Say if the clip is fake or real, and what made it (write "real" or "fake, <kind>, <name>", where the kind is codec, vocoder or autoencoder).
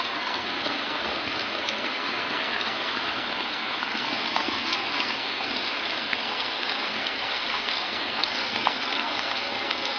fake, codec, SNAC